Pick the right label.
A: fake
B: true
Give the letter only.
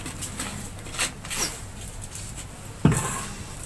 A